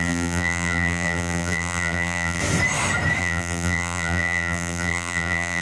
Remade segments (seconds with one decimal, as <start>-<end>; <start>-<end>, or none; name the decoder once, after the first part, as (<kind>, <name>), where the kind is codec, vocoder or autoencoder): 0.0-2.4 (vocoder, BigVGAN v2); 3.2-5.6